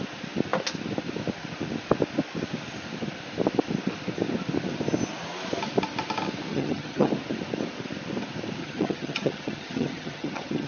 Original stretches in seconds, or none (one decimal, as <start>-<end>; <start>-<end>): 0.0-6.5; 7.1-8.6